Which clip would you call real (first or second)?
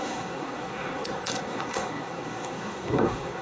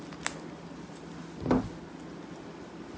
second